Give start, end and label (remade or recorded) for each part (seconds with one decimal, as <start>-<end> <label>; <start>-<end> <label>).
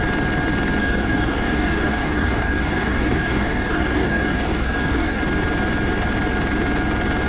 0.0-0.8 recorded; 0.8-5.2 remade; 5.2-7.3 recorded